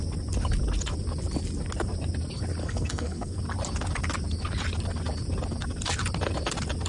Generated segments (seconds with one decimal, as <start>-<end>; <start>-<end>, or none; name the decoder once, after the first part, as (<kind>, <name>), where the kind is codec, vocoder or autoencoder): 2.6-3.4 (codec, SNAC)